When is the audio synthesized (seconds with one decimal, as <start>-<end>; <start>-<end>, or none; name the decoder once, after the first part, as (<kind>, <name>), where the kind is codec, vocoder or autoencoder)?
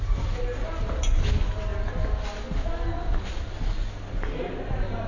none